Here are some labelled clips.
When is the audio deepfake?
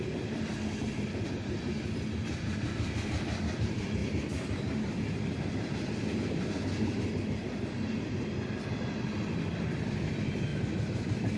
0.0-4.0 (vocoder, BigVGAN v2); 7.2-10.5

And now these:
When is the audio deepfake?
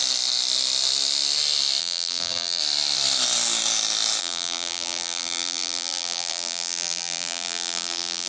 1.8-2.6 (vocoder, BigVGAN v2); 4.2-8.3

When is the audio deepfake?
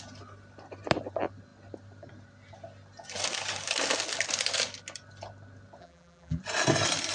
5.8-6.4 (vocoder, BigVGAN v2)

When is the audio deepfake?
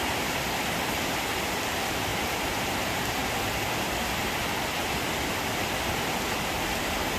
0.0-3.2 (vocoder, BigVGAN v2); 6.8-7.2